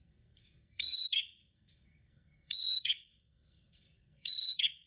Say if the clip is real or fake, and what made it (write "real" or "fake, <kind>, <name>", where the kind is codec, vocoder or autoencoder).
fake, codec, SNAC